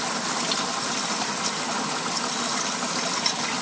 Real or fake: real